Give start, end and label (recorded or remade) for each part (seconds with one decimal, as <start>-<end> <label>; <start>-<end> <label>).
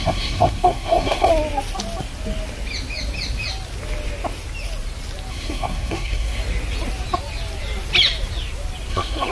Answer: 0.0-1.3 remade; 1.3-5.3 recorded; 5.3-6.4 remade; 6.4-8.9 recorded; 8.9-9.3 remade